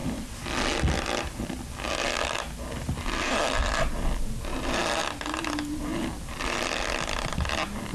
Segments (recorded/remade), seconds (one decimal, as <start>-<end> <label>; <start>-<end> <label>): 0.0-5.9 recorded; 5.9-7.3 remade; 7.3-7.9 recorded